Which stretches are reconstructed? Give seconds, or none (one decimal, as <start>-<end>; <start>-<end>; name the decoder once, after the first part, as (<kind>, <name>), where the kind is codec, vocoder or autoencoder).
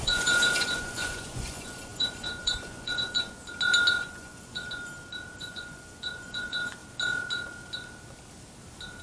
0.0-3.4 (vocoder, Vocos); 4.0-4.9; 5.4-6.8